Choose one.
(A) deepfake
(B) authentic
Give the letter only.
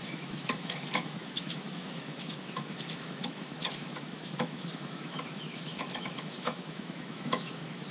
A